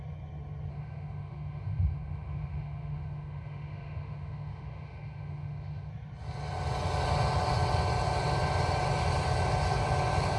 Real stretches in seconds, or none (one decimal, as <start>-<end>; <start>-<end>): 0.0-0.7; 5.9-10.4